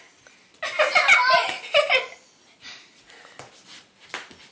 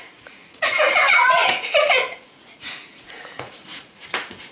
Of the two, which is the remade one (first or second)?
second